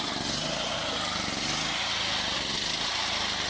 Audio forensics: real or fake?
real